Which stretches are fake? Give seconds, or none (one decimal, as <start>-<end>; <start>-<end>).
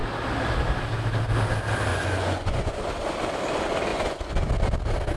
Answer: 1.9-2.8; 3.9-4.5